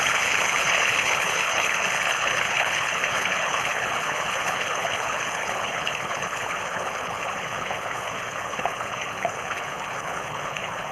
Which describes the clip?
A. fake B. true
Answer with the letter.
A